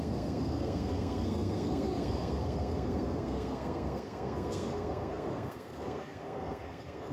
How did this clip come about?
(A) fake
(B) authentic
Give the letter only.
A